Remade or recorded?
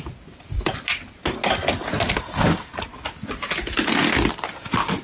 recorded